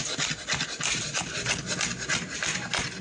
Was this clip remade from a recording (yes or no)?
no